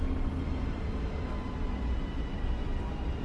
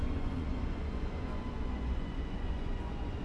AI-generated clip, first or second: second